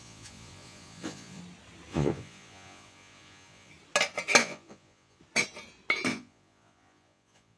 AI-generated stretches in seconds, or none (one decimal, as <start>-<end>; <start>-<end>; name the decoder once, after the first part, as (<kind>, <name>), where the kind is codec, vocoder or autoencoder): 0.0-1.4 (vocoder, Vocos); 1.9-3.7; 4.4-5.2; 6.1-7.6